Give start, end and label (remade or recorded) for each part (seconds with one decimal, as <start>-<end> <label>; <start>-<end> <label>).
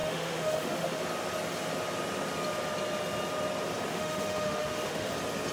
0.0-1.0 remade; 1.0-3.9 recorded; 3.9-5.1 remade; 5.1-5.5 recorded